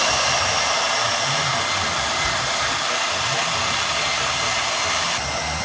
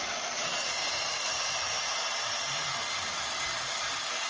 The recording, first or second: second